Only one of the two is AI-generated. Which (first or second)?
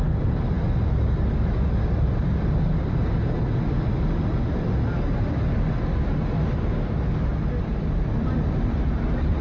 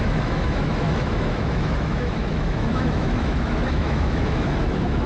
second